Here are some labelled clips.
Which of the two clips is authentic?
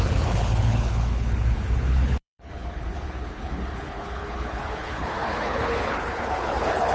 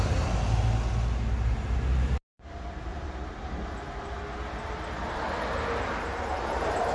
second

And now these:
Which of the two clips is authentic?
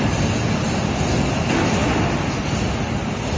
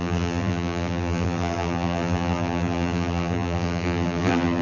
first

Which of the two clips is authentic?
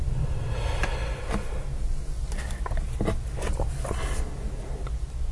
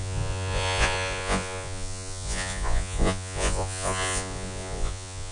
first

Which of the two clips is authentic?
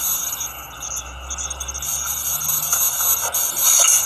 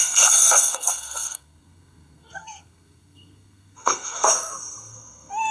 first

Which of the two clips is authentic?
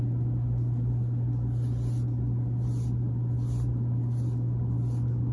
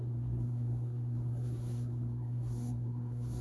first